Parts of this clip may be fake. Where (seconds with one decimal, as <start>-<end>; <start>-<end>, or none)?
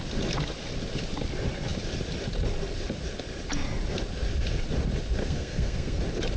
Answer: 5.2-6.0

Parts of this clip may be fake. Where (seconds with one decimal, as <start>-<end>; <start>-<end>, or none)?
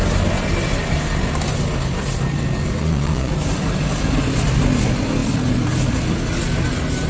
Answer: 2.8-3.3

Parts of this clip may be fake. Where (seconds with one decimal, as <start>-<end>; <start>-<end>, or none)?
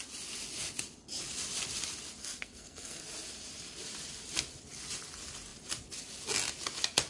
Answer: 2.2-3.0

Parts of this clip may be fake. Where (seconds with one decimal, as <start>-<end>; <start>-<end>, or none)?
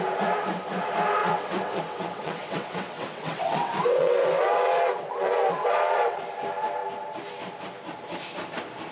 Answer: 1.2-6.2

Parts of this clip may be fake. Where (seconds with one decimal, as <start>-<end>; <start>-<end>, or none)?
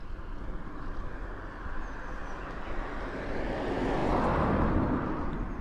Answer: none